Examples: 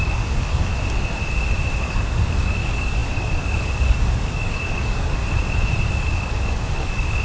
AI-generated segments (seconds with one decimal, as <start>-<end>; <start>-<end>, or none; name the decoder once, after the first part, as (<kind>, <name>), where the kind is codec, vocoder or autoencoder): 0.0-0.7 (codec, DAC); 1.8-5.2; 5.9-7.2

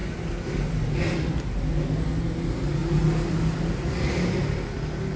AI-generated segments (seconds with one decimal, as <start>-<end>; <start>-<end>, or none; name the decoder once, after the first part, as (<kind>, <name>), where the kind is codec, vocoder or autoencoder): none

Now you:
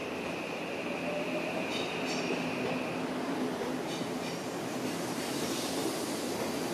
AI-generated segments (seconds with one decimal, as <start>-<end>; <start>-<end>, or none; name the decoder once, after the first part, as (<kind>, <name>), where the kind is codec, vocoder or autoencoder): 0.0-0.6 (vocoder, BigVGAN v2)

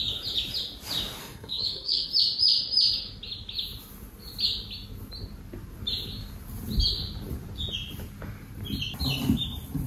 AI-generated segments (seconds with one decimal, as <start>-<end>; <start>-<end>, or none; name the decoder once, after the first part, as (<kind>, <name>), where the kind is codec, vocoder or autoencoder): 1.2-2.1 (codec, SNAC)

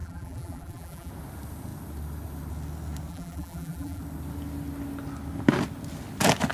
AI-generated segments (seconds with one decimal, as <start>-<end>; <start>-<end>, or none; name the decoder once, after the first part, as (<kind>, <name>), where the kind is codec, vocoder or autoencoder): 0.0-1.1 (vocoder, BigVGAN v2); 3.1-4.0

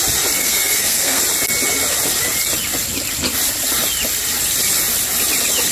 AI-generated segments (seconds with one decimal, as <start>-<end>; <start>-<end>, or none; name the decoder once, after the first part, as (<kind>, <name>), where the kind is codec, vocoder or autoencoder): 0.4-1.2 (codec, SNAC)